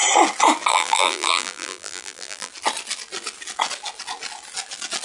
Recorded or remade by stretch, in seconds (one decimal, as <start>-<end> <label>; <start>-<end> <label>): 0.0-0.7 recorded; 0.7-2.5 remade; 2.5-5.0 recorded